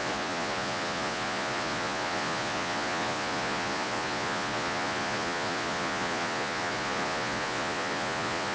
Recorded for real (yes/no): no